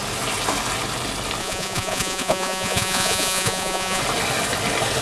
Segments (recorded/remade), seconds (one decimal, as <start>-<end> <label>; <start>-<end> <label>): 0.0-1.4 recorded; 1.4-4.0 remade; 4.0-5.0 recorded